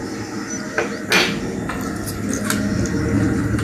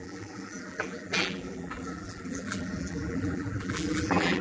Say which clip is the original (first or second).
first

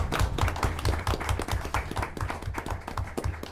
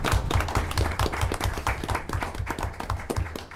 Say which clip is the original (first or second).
first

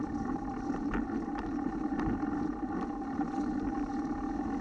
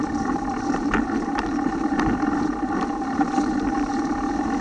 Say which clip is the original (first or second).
first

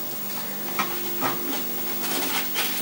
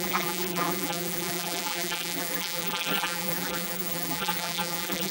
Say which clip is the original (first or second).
first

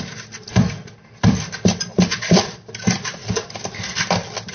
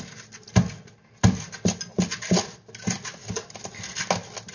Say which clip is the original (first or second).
second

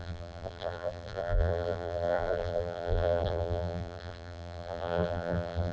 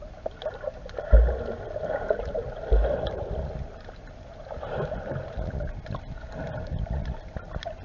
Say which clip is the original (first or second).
second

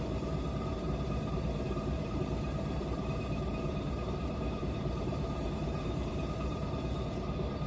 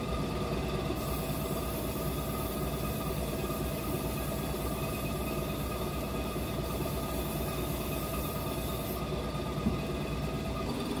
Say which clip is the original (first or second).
second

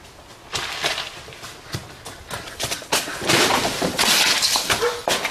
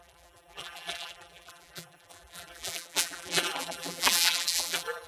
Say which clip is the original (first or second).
first